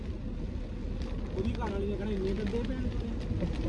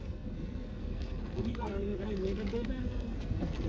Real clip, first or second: first